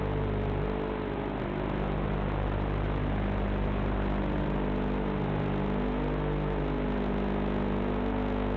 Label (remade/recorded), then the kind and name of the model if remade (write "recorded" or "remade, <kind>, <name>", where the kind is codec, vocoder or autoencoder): recorded